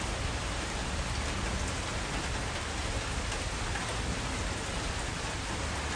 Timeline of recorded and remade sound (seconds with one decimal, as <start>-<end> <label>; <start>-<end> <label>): 0.0-6.0 recorded